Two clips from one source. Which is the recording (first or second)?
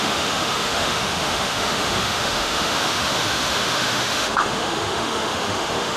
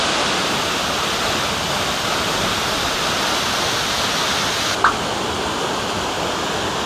second